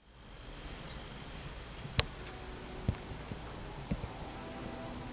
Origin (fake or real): real